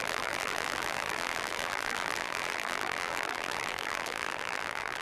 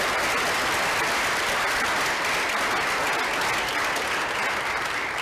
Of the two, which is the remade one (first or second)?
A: first